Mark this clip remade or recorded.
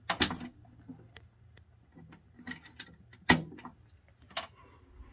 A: recorded